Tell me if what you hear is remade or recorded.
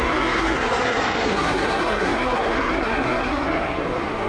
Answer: remade